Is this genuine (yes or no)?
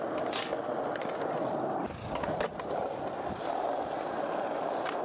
yes